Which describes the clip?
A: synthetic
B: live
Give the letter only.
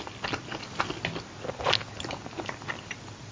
B